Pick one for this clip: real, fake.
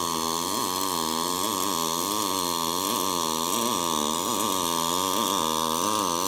real